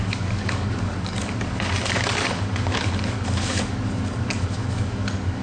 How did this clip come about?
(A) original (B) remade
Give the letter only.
B